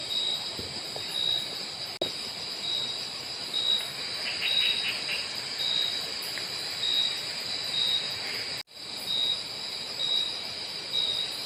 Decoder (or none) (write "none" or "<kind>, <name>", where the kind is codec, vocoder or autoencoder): none